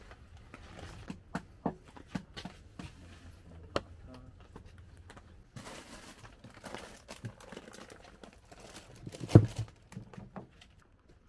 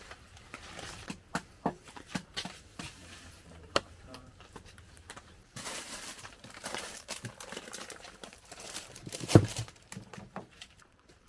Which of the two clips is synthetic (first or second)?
second